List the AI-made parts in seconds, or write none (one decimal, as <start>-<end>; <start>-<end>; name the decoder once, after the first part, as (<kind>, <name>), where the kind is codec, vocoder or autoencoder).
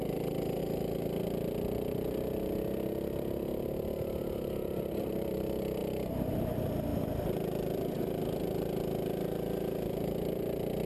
none